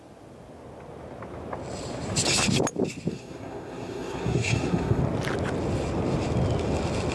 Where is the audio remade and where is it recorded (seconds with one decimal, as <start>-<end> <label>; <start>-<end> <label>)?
0.0-3.1 recorded; 3.1-5.0 remade; 5.0-7.1 recorded